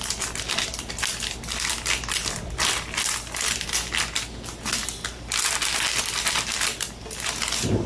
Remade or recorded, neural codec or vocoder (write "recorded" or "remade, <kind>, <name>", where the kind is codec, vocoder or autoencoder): recorded